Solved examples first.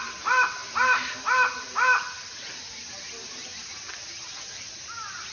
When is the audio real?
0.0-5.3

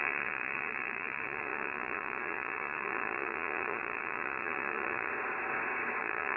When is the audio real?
5.1-6.0

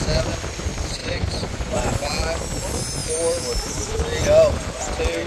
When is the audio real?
0.0-1.0; 2.0-5.3

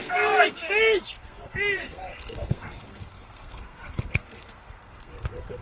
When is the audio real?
none